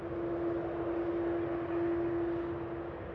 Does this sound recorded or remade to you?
recorded